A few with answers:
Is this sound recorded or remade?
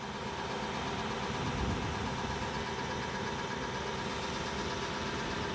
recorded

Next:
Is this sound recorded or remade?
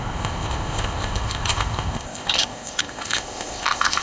remade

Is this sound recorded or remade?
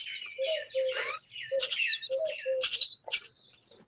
recorded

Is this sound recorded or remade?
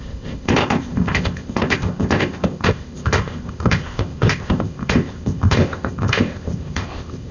remade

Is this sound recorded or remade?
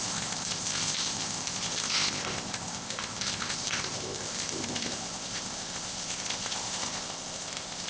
remade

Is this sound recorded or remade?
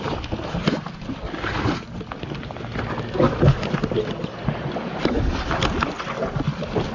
recorded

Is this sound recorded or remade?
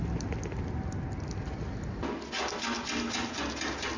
recorded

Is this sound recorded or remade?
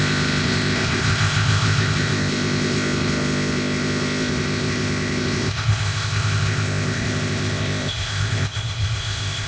remade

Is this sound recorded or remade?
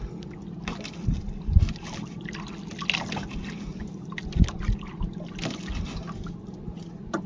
recorded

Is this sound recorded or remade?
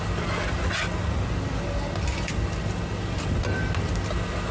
recorded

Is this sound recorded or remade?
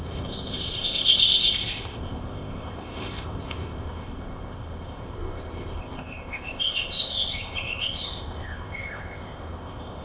remade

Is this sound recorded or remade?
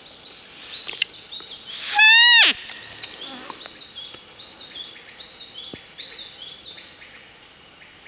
recorded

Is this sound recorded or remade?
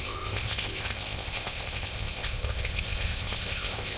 remade